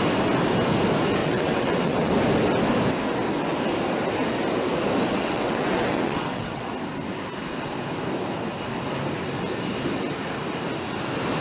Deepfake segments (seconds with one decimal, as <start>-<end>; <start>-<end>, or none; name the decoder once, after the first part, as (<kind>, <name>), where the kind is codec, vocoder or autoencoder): 1.2-2.1 (vocoder, WaveNeXt); 5.1-6.7